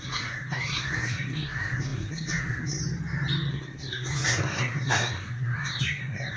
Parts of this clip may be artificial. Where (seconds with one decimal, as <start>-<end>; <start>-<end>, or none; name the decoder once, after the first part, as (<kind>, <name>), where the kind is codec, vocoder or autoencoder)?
0.0-2.8 (codec, SNAC); 3.5-6.4